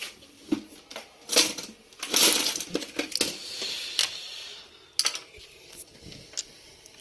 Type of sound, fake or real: real